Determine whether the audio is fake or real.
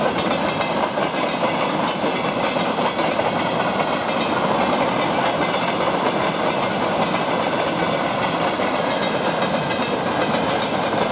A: real